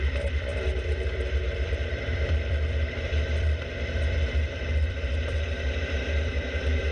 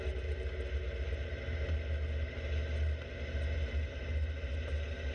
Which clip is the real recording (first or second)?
second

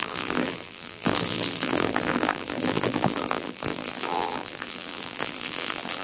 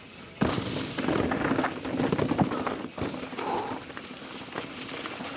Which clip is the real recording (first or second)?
second